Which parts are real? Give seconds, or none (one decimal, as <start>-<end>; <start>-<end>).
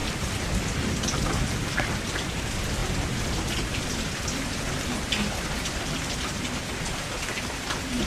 0.0-8.1